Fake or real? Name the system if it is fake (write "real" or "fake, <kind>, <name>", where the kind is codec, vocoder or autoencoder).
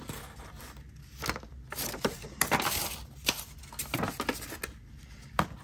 real